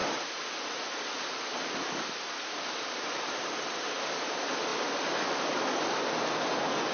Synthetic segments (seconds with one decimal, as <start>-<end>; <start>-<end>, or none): none